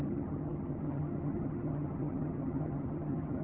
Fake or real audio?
fake